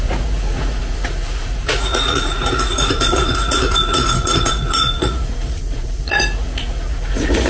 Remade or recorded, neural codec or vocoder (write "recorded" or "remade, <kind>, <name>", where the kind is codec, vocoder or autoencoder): remade, vocoder, Vocos